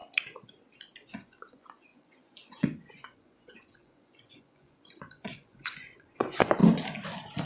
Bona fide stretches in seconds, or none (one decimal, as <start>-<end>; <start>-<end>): 0.0-1.1; 6.6-7.5